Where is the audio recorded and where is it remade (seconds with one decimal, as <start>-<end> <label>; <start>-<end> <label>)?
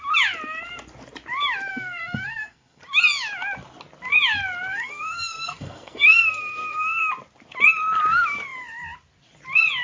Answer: 0.0-1.7 recorded; 1.7-2.8 remade; 2.8-4.7 recorded; 4.7-7.1 remade; 7.1-9.8 recorded